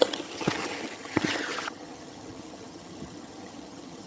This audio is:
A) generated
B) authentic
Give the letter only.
A